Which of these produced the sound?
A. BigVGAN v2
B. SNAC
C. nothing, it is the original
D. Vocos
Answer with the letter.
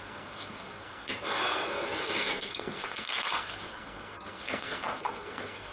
B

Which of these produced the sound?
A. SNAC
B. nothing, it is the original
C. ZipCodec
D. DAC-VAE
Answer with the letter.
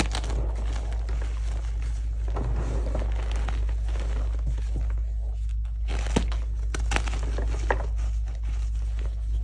B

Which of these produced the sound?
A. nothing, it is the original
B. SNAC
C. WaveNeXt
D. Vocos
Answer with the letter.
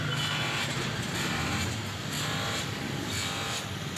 A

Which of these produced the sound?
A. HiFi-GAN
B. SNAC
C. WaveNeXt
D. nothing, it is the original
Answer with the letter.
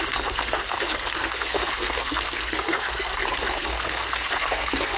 B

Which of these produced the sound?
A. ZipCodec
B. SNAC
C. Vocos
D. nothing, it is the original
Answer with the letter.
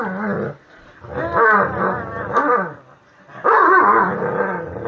D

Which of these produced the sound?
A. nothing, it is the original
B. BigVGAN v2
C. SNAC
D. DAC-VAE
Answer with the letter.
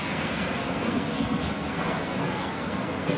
C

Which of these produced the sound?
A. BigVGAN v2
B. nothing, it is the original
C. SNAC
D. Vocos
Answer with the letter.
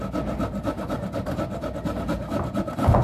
B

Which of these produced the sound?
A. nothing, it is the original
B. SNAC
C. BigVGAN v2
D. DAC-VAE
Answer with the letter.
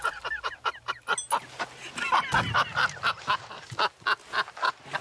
A